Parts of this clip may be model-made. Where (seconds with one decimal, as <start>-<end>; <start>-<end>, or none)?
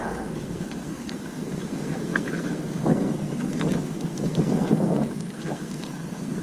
0.0-6.4